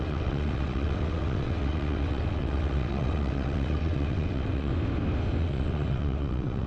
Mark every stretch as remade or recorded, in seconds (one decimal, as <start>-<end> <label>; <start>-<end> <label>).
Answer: 0.0-4.7 remade; 4.7-5.4 recorded; 5.4-6.7 remade